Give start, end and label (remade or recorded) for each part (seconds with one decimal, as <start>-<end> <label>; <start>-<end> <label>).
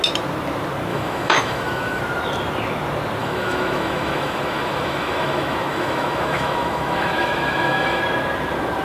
0.0-0.9 recorded; 0.9-2.0 remade; 2.0-3.2 recorded; 3.2-8.0 remade; 8.0-8.8 recorded